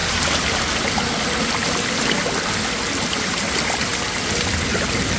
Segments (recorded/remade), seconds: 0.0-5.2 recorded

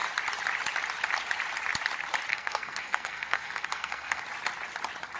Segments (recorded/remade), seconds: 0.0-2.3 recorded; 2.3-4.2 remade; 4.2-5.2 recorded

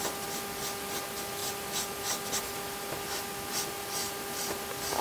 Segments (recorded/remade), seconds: 0.0-5.0 recorded

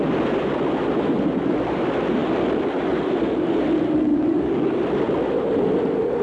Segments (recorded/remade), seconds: 0.0-4.1 recorded; 4.1-4.8 remade; 4.8-6.2 recorded

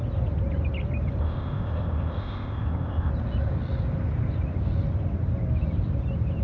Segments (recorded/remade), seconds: 0.0-1.2 recorded; 1.2-3.1 remade; 3.1-6.4 recorded

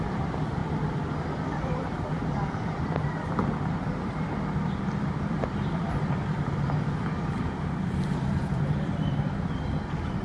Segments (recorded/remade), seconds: 0.0-10.2 remade